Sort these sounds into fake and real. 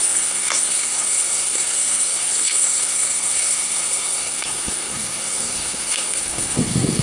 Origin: fake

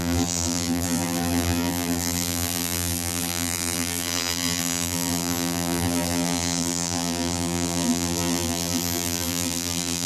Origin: fake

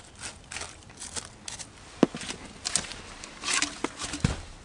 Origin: real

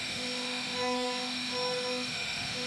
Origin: fake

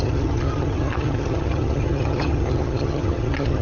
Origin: fake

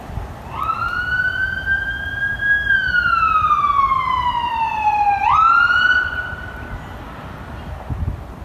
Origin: real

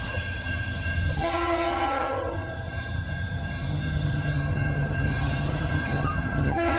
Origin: fake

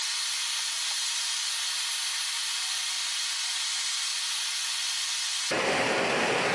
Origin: real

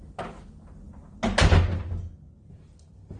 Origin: real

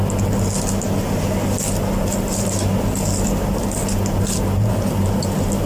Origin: real